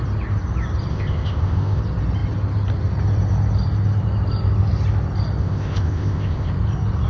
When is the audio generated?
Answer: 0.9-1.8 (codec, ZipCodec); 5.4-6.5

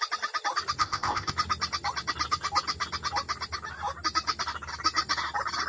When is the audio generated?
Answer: 0.8-1.3 (codec, ZipCodec)

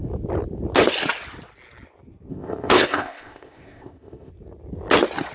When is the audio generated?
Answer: 2.3-4.3 (codec, ZipCodec)